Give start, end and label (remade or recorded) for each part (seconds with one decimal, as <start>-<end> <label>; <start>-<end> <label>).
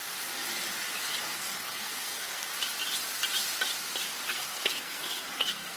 0.0-1.2 recorded; 1.2-2.5 remade; 2.5-4.3 recorded; 4.3-5.8 remade